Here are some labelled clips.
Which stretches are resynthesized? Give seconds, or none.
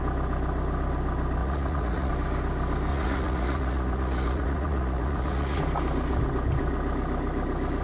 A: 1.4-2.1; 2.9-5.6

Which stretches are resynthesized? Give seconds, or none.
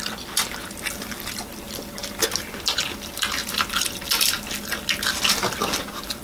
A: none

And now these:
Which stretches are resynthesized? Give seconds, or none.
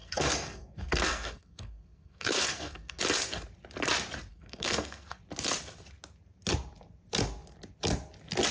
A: 0.0-3.0; 4.3-5.2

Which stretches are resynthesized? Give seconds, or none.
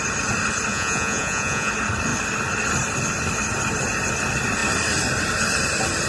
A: 0.7-1.7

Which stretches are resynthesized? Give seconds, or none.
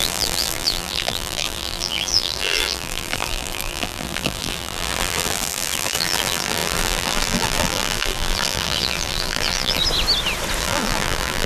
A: 0.0-9.8; 10.6-11.5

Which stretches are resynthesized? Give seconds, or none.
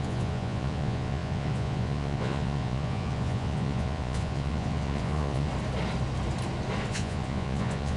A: 0.0-5.5; 6.9-8.0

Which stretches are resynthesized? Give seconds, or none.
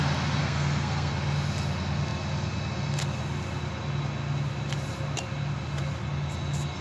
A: 0.4-1.1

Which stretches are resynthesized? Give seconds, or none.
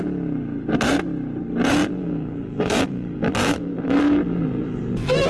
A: 1.8-5.3